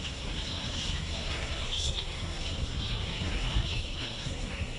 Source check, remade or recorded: remade